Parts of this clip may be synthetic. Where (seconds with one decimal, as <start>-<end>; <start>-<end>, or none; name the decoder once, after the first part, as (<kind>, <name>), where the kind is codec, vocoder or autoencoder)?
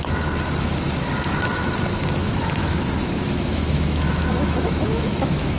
2.2-5.6 (autoencoder, DAC-VAE)